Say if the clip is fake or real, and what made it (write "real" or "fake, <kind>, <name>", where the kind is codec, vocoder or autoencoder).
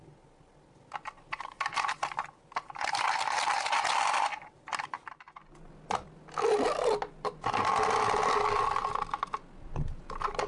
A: real